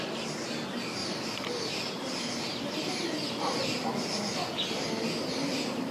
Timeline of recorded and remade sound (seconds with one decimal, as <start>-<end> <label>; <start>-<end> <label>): 0.0-1.0 recorded; 1.0-4.5 remade; 4.5-5.9 recorded